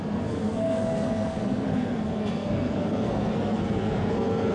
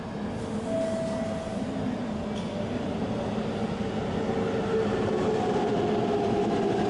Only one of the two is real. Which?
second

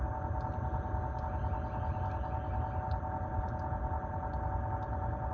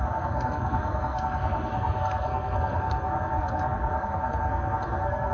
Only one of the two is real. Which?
first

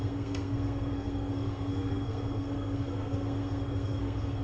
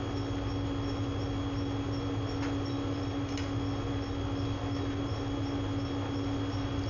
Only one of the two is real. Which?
second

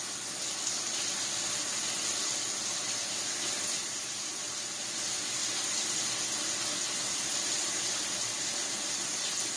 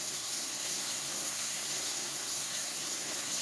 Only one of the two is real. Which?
first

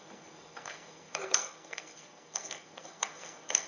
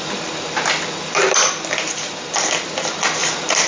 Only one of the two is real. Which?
second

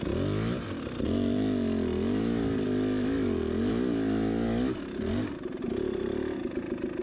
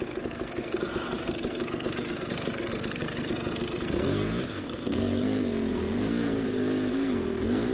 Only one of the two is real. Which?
first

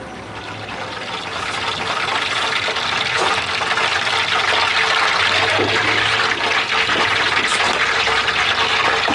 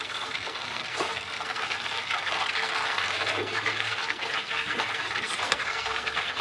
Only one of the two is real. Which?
first